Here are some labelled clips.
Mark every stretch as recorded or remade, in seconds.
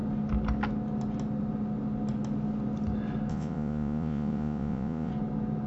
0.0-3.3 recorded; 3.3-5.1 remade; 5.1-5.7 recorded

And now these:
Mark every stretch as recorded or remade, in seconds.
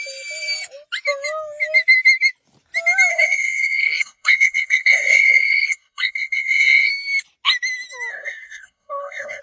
0.0-3.1 recorded; 3.1-6.9 remade; 6.9-8.1 recorded; 8.1-9.4 remade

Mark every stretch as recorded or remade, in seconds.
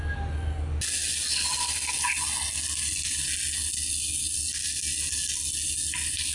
0.0-6.3 recorded